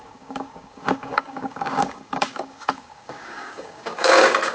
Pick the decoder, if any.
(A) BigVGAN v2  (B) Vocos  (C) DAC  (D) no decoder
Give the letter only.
C